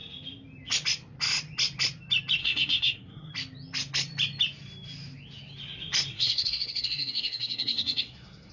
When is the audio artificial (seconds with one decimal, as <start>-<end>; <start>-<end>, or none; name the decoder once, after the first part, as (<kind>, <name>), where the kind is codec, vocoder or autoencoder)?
2.4-3.3 (codec, SNAC); 6.1-8.5